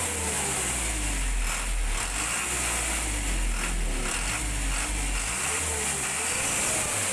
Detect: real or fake real